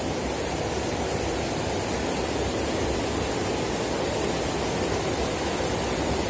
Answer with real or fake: real